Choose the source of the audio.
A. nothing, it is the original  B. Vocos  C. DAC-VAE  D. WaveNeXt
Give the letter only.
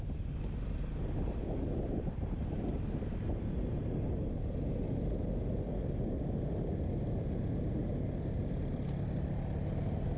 A